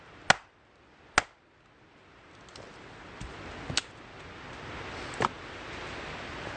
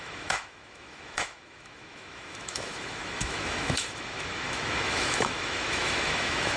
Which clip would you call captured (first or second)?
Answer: first